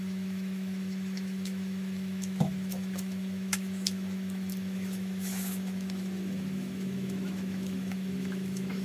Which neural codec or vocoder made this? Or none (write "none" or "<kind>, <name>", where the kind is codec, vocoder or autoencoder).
autoencoder, DAC-VAE